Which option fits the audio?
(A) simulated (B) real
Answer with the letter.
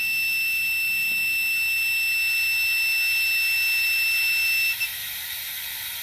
B